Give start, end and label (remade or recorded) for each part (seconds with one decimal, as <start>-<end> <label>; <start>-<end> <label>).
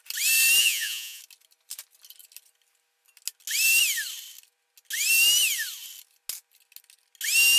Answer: 0.0-0.6 recorded; 0.6-1.2 remade; 1.2-7.6 recorded